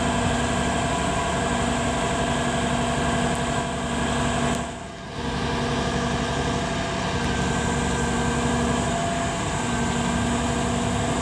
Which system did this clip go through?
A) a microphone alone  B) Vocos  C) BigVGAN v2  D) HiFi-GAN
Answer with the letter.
A